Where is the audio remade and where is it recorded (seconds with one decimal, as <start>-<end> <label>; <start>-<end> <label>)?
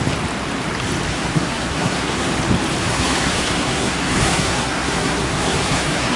0.0-1.1 recorded; 1.1-2.3 remade; 2.3-2.8 recorded; 2.8-6.2 remade